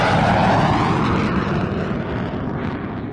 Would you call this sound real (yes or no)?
yes